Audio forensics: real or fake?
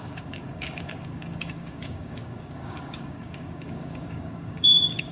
fake